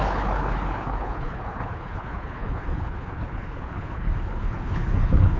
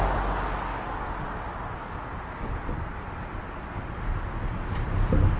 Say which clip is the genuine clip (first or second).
second